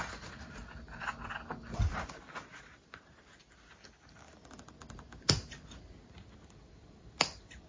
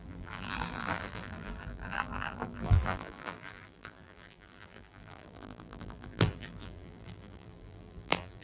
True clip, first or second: first